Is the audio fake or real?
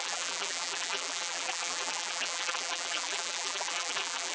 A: fake